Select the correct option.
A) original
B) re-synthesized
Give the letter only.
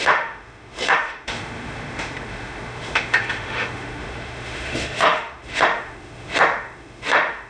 B